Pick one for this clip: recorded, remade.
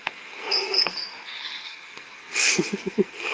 remade